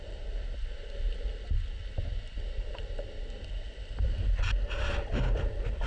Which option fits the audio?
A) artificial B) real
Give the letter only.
B